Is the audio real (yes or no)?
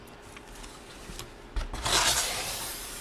yes